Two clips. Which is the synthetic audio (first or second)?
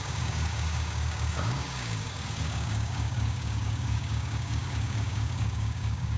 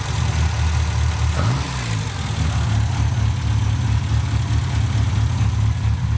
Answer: first